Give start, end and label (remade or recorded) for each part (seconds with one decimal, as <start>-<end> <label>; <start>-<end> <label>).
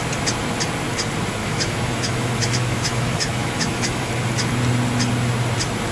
0.0-1.4 recorded; 1.4-4.1 remade; 4.1-5.9 recorded